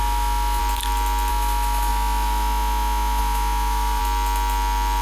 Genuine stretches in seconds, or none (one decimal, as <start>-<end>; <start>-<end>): 0.6-1.3; 4.0-5.0